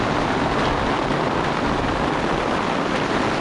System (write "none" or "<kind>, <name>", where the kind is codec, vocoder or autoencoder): none